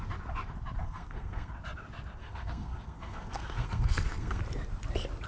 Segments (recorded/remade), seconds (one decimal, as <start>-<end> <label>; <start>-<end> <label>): 0.0-0.8 recorded; 0.8-1.5 remade; 1.5-2.2 recorded; 2.2-4.4 remade; 4.4-5.3 recorded